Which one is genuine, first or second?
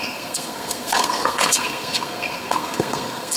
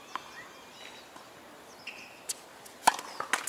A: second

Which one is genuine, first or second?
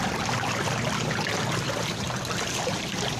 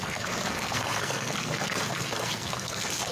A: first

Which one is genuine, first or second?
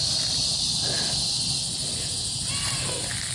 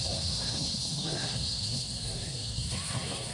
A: first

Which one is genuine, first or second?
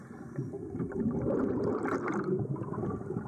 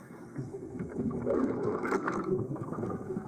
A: first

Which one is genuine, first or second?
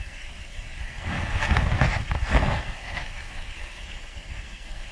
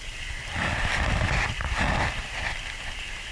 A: second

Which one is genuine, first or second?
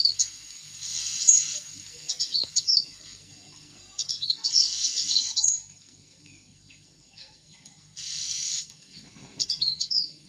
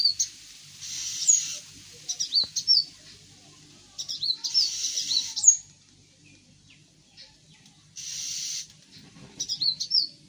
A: second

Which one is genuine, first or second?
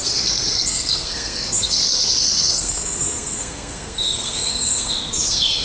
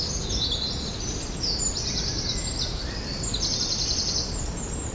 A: second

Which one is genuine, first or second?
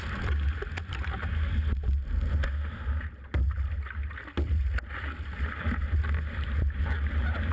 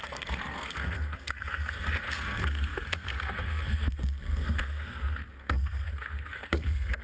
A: first